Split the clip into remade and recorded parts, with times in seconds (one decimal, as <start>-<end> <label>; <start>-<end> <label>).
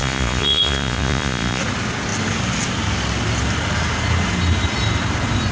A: 0.0-1.6 remade; 1.6-5.5 recorded